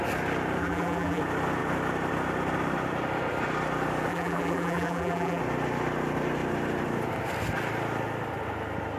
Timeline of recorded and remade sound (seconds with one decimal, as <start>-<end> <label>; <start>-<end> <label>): 0.0-0.6 recorded; 0.6-1.2 remade; 1.2-4.1 recorded; 4.1-5.4 remade; 5.4-9.0 recorded